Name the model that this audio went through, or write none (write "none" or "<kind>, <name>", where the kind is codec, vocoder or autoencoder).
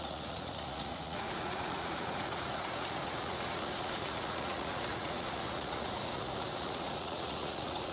vocoder, Vocos